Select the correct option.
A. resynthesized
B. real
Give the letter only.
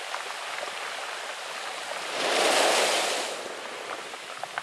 B